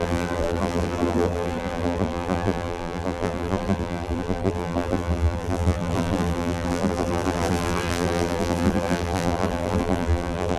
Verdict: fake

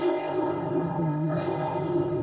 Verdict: fake